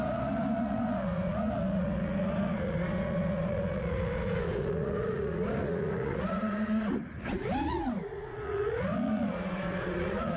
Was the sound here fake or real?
fake